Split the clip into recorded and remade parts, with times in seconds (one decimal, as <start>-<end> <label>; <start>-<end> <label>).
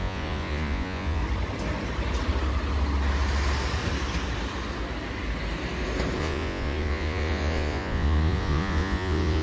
0.0-1.2 remade; 1.2-6.2 recorded; 6.2-9.4 remade